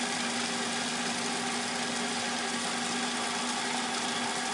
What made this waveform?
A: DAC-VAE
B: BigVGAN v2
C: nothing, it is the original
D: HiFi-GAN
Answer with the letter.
C